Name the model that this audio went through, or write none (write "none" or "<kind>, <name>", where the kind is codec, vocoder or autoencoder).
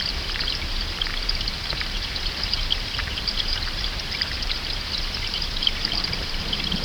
vocoder, BigVGAN v2